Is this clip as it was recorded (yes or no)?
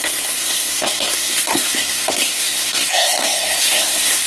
no